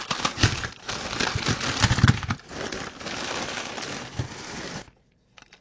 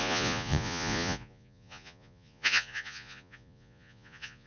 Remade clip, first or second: second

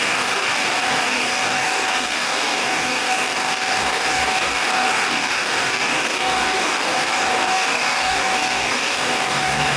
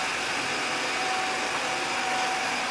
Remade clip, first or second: first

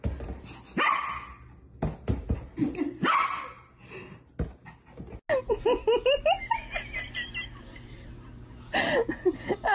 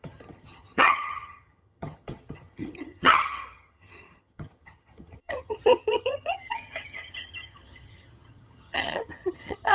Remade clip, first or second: second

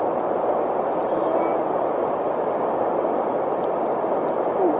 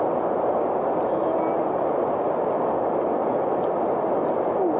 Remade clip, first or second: first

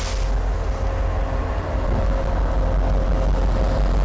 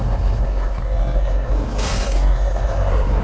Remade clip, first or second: second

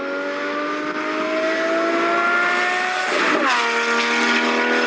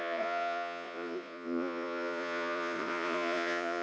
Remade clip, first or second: second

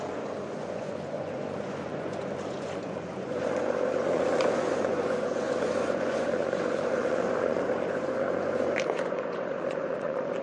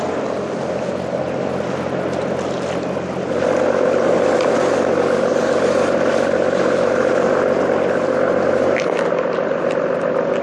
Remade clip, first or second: first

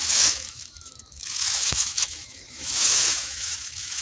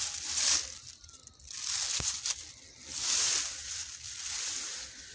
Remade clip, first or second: first